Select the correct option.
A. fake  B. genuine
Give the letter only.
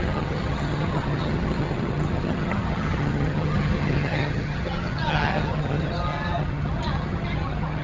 A